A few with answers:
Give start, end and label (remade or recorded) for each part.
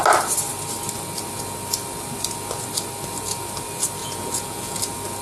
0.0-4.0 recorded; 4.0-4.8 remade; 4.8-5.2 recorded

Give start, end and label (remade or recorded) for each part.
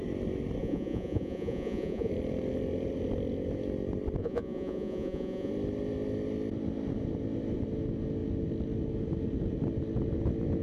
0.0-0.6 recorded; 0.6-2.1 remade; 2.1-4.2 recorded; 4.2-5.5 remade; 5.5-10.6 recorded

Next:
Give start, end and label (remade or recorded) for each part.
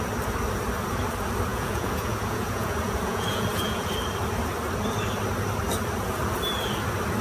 0.0-1.5 recorded; 1.5-3.9 remade; 3.9-7.2 recorded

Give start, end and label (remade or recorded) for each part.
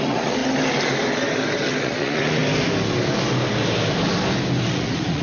0.0-0.4 remade; 0.4-1.8 recorded; 1.8-2.4 remade; 2.4-4.7 recorded; 4.7-5.2 remade